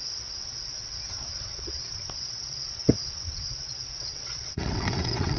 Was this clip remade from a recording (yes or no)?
yes